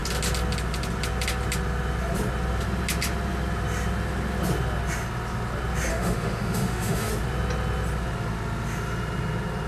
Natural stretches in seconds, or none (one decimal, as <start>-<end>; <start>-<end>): 0.0-5.9; 7.1-9.7